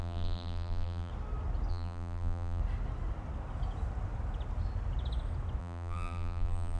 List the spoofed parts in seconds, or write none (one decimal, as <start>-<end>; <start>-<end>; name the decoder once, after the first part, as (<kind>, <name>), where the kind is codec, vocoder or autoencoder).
0.0-1.1 (vocoder, BigVGAN v2); 1.7-2.6; 5.6-6.8